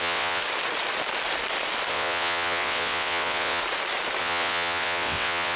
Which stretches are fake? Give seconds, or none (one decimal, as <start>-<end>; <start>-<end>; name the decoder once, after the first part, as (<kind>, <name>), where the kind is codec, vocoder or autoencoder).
0.0-0.4 (vocoder, WaveNeXt); 1.9-3.6; 4.2-5.6